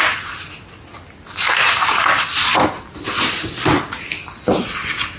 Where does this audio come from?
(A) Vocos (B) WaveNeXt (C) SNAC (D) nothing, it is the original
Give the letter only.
D